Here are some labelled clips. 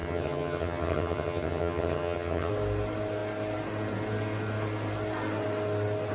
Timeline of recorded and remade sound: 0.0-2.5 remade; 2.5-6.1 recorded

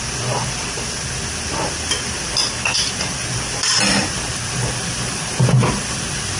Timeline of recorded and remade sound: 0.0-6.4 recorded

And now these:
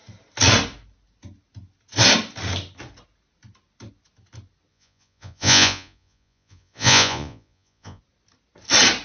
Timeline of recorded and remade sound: 0.0-4.7 recorded; 4.7-8.0 remade; 8.0-9.0 recorded

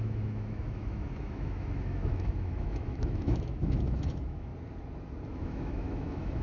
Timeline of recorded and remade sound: 0.0-4.5 remade; 4.5-5.3 recorded; 5.3-6.4 remade

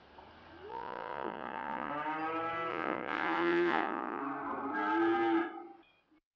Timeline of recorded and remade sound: 0.0-0.7 recorded; 0.7-1.9 remade; 1.9-2.7 recorded; 2.7-4.2 remade; 4.2-6.4 recorded